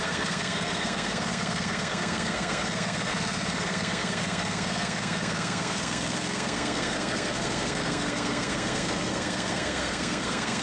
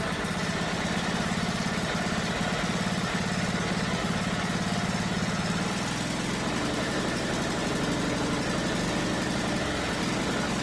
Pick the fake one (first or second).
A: first